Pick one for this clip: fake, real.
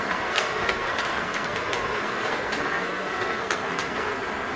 fake